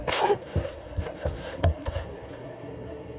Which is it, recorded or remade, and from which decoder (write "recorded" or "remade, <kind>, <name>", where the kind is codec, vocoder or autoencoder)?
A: remade, codec, SNAC